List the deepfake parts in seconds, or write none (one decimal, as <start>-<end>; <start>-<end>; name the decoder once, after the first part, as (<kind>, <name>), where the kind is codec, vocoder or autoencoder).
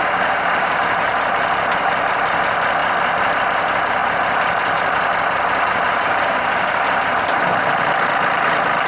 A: none